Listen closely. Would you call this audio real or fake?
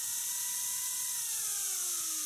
real